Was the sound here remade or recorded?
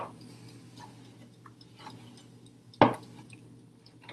recorded